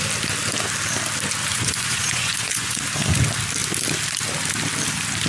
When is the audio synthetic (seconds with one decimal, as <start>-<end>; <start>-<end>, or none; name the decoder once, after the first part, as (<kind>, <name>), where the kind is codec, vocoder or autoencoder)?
1.5-2.8 (vocoder, Vocos)